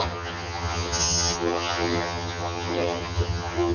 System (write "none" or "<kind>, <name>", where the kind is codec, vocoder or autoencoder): vocoder, HiFi-GAN